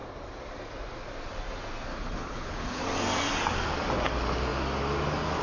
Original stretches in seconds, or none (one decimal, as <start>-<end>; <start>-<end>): 0.0-1.9; 2.8-5.4

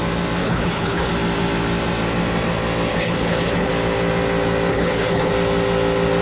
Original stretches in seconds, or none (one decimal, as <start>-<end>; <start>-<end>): 0.0-0.4; 1.1-2.9; 3.7-4.7; 5.3-6.2

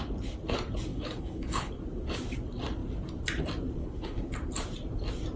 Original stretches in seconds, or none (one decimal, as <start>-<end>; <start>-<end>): 0.0-0.9; 1.7-3.8; 4.3-5.4

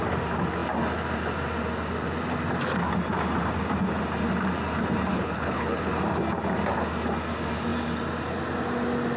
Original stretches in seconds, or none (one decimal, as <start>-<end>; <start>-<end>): 0.0-5.1; 5.9-9.2